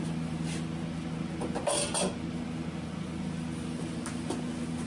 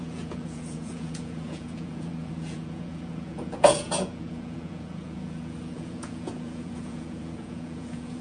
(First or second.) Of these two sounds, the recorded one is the first